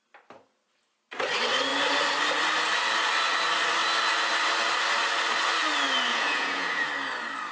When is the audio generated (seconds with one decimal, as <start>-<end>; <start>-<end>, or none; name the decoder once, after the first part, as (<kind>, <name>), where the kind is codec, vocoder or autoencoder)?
6.1-6.9 (vocoder, Vocos)